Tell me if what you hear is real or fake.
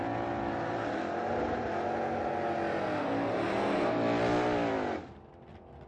real